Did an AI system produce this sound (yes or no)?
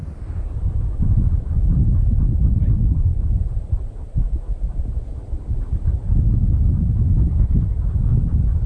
no